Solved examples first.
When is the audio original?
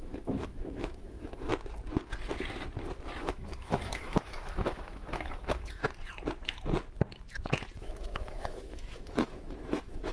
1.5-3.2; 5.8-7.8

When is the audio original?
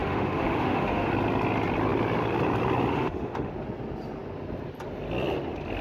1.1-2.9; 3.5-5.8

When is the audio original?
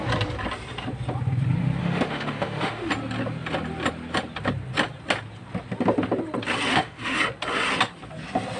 0.0-1.8; 2.9-6.7; 7.2-8.6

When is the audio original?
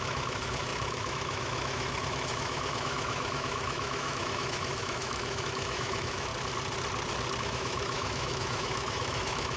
6.3-7.4